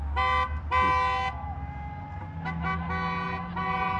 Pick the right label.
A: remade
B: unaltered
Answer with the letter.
B